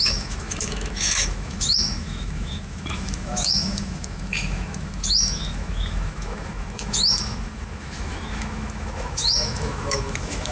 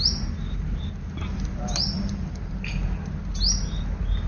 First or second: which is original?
second